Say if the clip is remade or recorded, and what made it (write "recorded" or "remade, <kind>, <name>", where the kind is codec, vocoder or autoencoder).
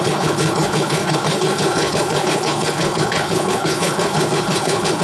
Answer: remade, codec, HILCodec